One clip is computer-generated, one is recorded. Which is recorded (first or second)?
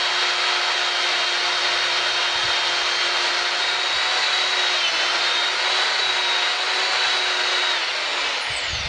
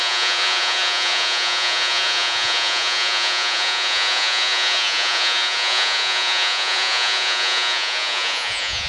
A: first